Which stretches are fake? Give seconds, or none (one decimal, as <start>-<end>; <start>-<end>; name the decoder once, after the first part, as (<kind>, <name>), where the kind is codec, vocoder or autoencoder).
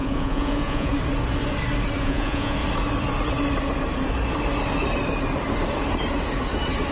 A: 0.0-0.9 (vocoder, Vocos); 2.0-2.6